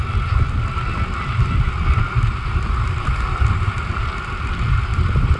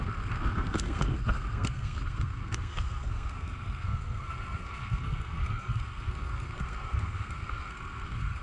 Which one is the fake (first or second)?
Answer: second